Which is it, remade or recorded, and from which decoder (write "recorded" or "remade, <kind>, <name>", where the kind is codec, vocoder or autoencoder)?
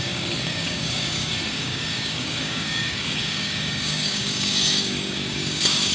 remade, codec, DAC